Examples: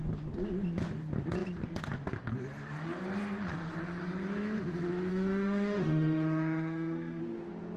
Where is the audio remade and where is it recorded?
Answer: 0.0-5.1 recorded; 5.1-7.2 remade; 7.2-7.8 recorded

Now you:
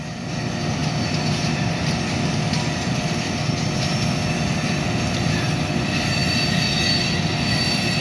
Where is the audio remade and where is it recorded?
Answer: 0.0-8.0 recorded

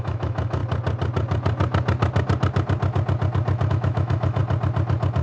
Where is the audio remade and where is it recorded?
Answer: 0.0-0.6 remade; 0.6-3.7 recorded; 3.7-4.4 remade; 4.4-5.2 recorded

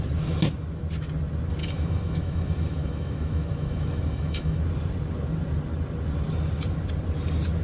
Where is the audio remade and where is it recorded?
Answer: 0.0-1.6 recorded; 1.6-4.6 remade; 4.6-7.6 recorded

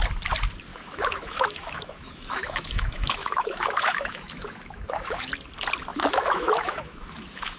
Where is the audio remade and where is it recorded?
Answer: 0.0-0.7 recorded; 0.7-5.3 remade; 5.3-5.9 recorded; 5.9-7.6 remade

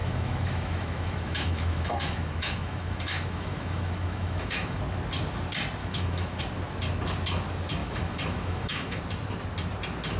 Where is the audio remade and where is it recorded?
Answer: 0.0-4.8 remade; 4.8-5.8 recorded; 5.8-6.4 remade; 6.4-7.8 recorded; 7.8-9.0 remade; 9.0-10.2 recorded

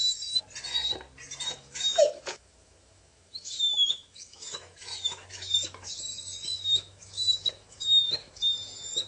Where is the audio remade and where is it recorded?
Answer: 0.0-1.5 recorded; 1.5-9.1 remade

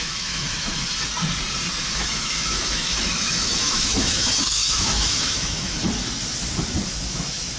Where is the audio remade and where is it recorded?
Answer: 0.0-0.7 remade; 0.7-1.8 recorded; 1.8-5.8 remade; 5.8-6.9 recorded; 6.9-7.6 remade